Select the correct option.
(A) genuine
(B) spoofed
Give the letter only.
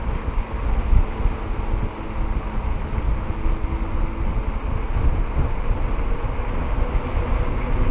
A